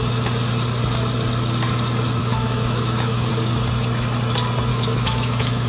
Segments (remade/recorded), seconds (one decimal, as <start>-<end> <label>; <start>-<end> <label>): 0.0-2.2 recorded; 2.2-3.3 remade; 3.3-4.7 recorded; 4.7-5.7 remade